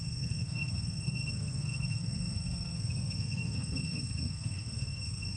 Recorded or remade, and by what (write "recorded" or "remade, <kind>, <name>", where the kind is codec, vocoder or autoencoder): remade, codec, SNAC